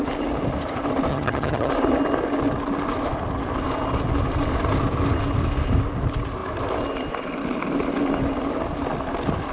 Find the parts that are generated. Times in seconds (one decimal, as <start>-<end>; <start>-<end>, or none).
1.1-1.7